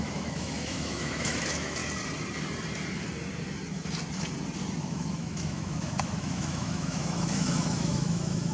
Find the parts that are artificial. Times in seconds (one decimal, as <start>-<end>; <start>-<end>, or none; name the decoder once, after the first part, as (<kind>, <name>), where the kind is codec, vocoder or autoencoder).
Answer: 0.0-1.8 (autoencoder, DAC-VAE); 4.8-8.5